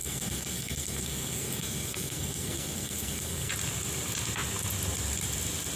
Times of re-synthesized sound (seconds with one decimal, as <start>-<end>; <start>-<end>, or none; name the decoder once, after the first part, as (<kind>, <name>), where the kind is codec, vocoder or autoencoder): 0.0-3.5 (codec, SNAC)